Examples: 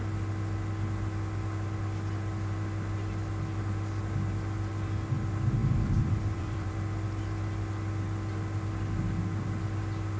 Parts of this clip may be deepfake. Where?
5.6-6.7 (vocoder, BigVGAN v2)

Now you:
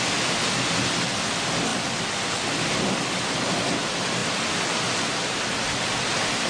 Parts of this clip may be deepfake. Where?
none

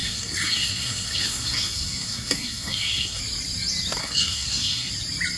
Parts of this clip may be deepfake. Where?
0.0-3.2 (codec, SNAC); 4.0-4.9

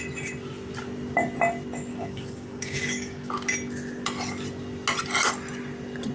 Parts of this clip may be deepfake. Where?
1.9-3.3 (codec, DAC)